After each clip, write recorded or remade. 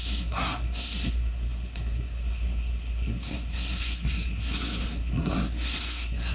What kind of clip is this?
remade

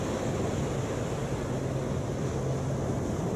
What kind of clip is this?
recorded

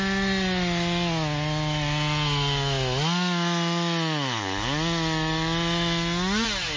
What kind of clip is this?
recorded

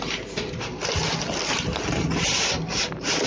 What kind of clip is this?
recorded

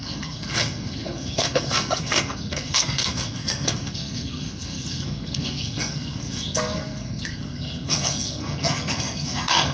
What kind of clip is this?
remade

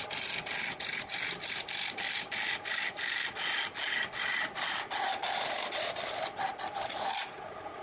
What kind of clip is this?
recorded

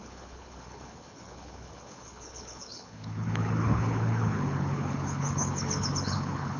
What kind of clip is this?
remade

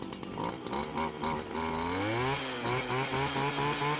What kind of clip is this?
recorded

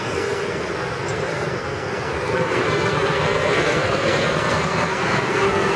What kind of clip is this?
remade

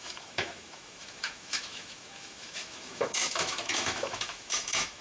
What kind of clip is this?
remade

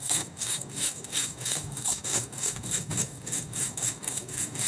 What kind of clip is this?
remade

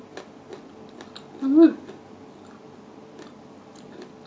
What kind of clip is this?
recorded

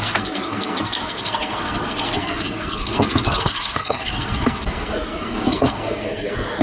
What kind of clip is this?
remade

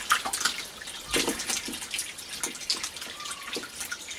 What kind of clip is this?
recorded